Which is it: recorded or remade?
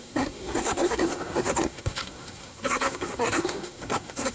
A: remade